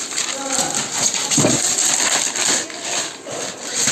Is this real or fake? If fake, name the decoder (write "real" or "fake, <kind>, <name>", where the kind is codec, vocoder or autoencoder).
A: real